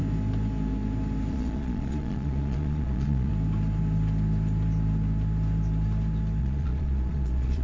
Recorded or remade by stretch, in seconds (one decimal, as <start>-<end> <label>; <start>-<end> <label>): 0.0-1.3 recorded; 1.3-3.3 remade; 3.3-6.4 recorded; 6.4-7.6 remade